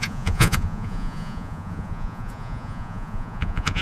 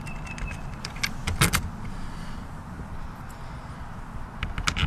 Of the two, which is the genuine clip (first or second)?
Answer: second